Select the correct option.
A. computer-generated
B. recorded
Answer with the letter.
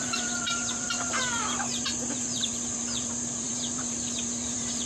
A